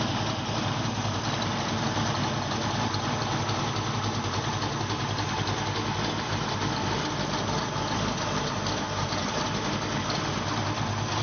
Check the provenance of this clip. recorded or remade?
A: recorded